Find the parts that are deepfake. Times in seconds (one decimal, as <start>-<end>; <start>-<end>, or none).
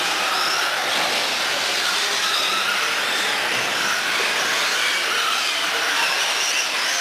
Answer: none